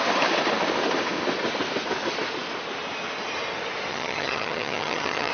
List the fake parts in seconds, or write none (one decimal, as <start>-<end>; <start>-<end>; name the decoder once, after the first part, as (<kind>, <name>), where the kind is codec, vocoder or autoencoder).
3.9-5.3 (vocoder, HiFi-GAN)